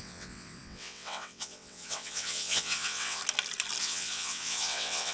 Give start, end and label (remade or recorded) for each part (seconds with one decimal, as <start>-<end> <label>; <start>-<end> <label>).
0.0-3.2 remade; 3.2-3.8 recorded; 3.8-5.1 remade